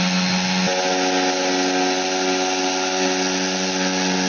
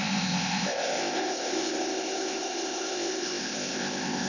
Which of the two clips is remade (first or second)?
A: second